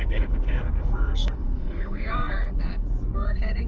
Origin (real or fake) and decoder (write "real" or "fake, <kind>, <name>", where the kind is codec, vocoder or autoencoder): fake, codec, SNAC